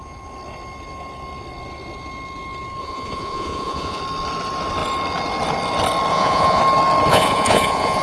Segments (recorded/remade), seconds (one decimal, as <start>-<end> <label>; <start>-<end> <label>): 0.0-2.8 recorded; 2.8-4.0 remade; 4.0-6.1 recorded; 6.1-6.6 remade; 6.6-7.1 recorded; 7.1-8.0 remade